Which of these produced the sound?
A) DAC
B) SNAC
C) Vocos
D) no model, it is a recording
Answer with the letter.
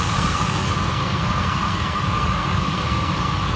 B